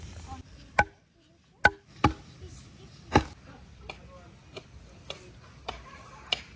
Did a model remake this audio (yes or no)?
no